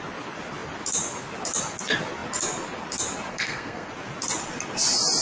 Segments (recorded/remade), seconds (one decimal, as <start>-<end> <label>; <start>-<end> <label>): 0.0-3.3 recorded; 3.3-3.9 remade; 3.9-5.2 recorded